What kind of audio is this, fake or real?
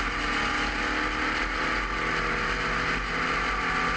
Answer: real